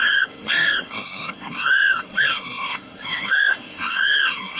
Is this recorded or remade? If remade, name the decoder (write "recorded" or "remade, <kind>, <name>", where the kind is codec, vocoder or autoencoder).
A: remade, codec, SNAC